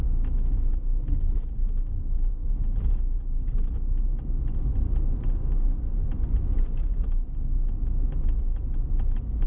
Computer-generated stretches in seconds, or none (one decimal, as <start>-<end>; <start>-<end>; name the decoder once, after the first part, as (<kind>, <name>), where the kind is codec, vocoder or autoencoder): none